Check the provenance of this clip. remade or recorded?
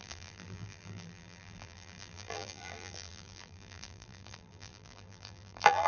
remade